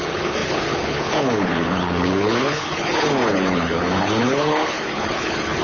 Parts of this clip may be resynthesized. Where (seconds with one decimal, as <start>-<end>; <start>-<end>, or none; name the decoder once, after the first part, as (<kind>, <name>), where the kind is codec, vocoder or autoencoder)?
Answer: 0.0-5.6 (codec, HILCodec)